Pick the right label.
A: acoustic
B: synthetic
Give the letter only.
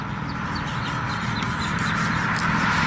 B